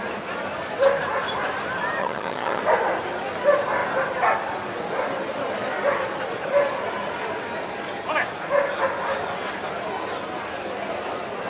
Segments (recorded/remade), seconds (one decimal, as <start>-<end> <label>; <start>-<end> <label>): 0.0-2.0 recorded; 2.0-2.6 remade; 2.6-11.5 recorded